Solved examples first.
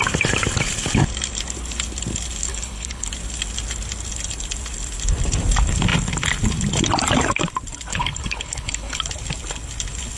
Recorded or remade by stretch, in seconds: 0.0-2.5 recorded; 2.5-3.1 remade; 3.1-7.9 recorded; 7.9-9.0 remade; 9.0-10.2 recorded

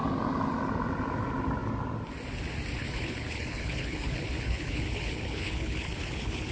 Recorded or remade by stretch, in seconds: 0.0-2.8 recorded; 2.8-6.5 remade